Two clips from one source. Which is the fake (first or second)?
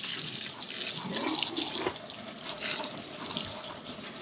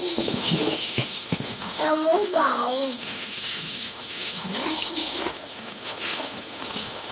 second